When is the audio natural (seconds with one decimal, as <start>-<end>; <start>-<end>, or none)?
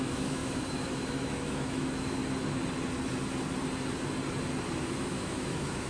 2.2-4.8